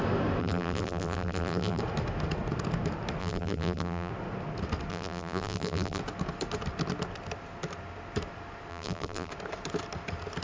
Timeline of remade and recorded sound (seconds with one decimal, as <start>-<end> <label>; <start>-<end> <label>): 0.0-0.4 recorded; 0.4-1.8 remade; 1.8-3.2 recorded; 3.2-4.1 remade; 4.1-4.9 recorded; 4.9-6.0 remade; 6.0-8.7 recorded; 8.7-9.3 remade; 9.3-10.4 recorded